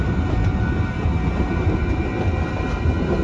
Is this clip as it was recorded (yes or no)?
yes